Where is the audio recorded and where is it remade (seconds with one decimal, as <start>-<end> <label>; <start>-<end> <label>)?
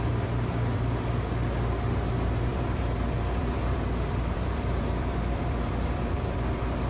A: 0.0-2.5 recorded; 2.5-6.9 remade